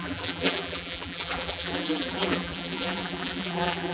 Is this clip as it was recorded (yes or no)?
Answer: no